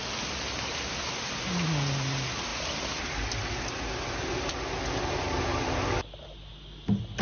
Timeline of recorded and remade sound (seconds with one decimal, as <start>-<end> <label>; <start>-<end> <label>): 0.0-7.2 recorded